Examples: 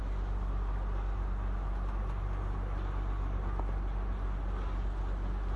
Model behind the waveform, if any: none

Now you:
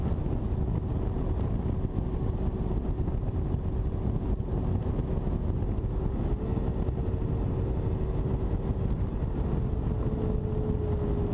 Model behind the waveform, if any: none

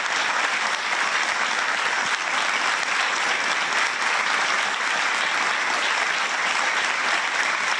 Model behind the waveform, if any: vocoder, BigVGAN v2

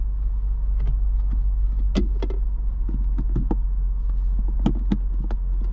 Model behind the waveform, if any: none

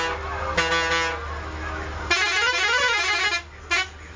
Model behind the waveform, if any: none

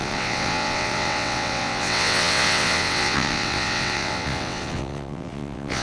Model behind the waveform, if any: vocoder, WaveNeXt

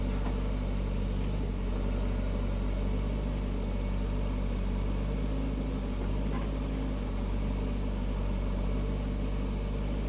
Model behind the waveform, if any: none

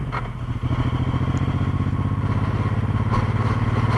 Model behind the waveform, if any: none